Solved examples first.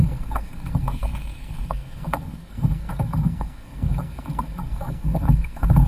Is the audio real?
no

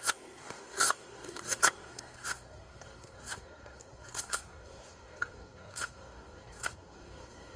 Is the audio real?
no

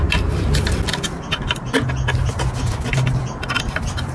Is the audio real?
yes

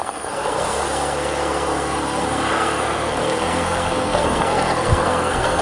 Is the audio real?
no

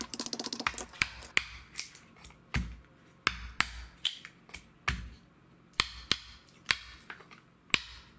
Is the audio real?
yes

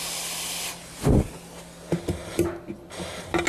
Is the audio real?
yes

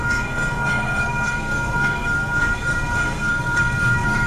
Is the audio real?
no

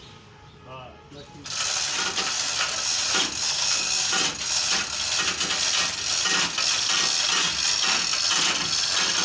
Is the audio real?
yes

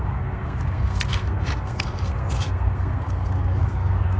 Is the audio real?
no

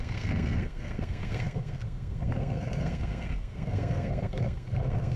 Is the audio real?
no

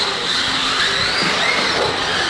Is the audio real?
yes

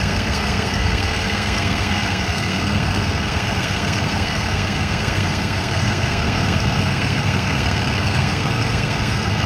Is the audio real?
no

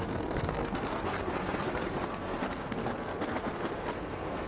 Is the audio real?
no